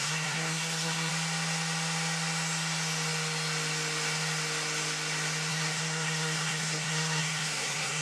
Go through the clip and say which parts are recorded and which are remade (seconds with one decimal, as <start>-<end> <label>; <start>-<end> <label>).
0.0-1.1 remade; 1.1-5.5 recorded; 5.5-8.0 remade